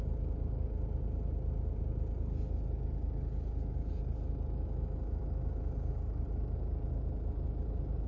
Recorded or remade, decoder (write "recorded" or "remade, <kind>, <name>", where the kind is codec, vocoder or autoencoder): recorded